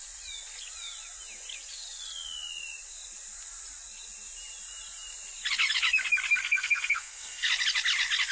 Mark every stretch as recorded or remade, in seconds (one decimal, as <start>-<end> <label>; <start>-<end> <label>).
0.0-6.4 recorded; 6.4-7.5 remade; 7.5-8.3 recorded